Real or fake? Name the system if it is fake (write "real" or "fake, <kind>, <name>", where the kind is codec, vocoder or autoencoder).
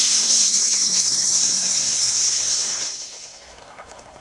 fake, codec, SNAC